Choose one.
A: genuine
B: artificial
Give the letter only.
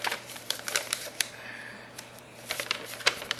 B